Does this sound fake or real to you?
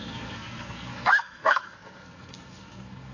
fake